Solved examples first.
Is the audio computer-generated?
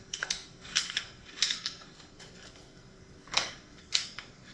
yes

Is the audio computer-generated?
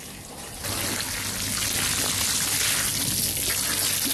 no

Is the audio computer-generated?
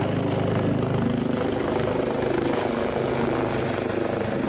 no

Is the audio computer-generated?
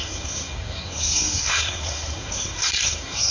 yes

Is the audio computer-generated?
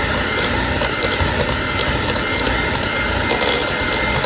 no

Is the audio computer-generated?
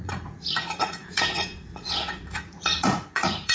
yes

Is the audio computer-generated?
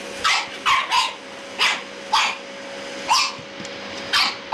no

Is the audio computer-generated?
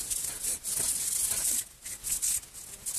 no